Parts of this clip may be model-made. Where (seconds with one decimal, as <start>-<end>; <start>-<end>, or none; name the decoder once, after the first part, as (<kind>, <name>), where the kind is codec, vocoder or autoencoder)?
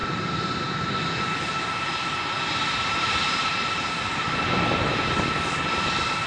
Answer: 0.0-1.0 (vocoder, BigVGAN v2); 2.5-5.0